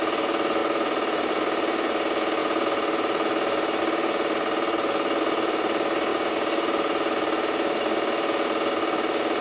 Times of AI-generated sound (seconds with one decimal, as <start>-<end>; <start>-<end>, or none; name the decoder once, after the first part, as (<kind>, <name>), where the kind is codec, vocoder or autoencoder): 0.6-1.3 (vocoder, BigVGAN v2)

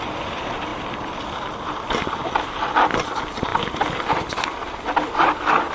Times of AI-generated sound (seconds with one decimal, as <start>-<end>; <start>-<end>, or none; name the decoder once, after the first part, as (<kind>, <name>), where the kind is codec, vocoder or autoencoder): 0.7-3.0 (vocoder, BigVGAN v2); 3.5-5.1

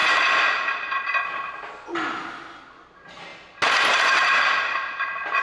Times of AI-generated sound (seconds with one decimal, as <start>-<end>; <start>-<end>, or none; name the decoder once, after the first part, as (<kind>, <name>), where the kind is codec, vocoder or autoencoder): none

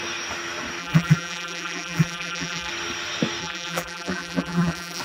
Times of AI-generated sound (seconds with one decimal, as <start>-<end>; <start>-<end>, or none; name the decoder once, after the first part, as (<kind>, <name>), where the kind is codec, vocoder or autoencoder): 0.8-2.7 (vocoder, BigVGAN v2); 3.4-5.0

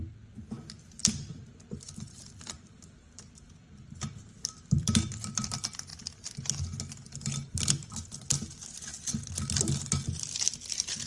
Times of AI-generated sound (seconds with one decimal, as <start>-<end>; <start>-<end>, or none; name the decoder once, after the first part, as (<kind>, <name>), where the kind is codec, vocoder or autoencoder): 1.0-5.5 (vocoder, BigVGAN v2)

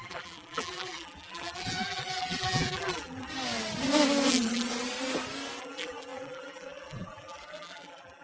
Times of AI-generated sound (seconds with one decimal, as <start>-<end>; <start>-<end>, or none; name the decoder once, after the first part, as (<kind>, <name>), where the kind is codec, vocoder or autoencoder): 0.0-3.3 (vocoder, BigVGAN v2); 4.3-4.7; 5.6-8.2

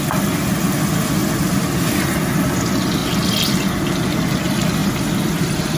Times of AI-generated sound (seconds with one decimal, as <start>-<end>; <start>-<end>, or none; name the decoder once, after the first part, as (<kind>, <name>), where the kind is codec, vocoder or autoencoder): 4.8-5.8 (vocoder, BigVGAN v2)

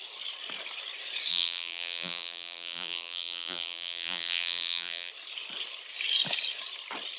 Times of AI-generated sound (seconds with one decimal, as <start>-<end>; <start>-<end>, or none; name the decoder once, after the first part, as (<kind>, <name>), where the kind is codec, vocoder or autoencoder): 1.3-5.1 (vocoder, BigVGAN v2)